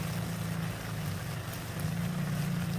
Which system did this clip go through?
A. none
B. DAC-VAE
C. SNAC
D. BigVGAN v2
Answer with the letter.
A